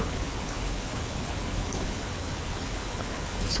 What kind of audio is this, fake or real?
fake